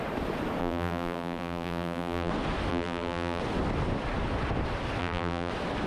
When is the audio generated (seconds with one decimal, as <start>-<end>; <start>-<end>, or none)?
0.6-2.3; 2.7-3.4; 5.0-5.5